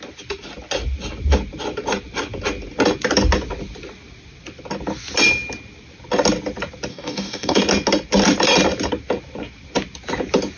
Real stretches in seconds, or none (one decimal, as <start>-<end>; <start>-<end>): 0.0-6.9; 7.6-10.6